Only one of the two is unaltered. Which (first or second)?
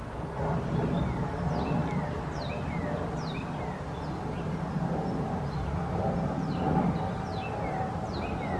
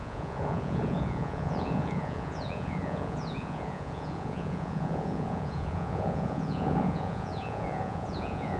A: first